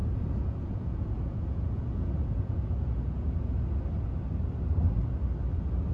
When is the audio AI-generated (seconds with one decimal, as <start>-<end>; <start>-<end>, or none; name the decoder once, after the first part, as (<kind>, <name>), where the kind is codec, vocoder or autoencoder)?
0.0-3.5 (vocoder, Vocos)